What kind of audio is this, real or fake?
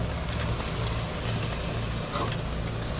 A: real